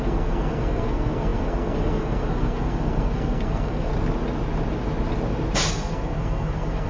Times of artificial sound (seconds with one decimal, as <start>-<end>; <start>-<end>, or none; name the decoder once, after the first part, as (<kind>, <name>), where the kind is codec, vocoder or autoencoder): 0.0-3.9 (codec, SNAC); 5.7-6.9